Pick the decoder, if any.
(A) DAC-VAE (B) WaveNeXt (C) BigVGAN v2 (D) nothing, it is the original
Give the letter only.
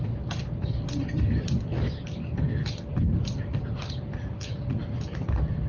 D